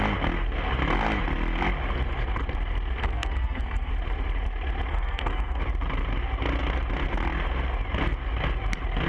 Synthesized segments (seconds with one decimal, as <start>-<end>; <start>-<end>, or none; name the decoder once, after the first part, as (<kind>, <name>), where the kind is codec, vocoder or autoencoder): 3.0-3.9 (codec, SNAC); 4.9-5.6